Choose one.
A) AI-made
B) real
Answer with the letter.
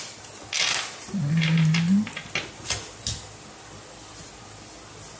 B